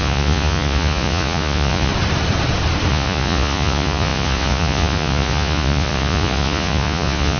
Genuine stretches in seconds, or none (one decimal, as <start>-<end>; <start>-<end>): 1.9-2.9